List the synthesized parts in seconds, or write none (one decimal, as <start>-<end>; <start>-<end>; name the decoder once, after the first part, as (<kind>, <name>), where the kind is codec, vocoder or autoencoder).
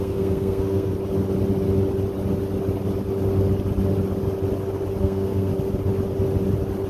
0.0-0.9 (codec, SNAC); 5.0-5.5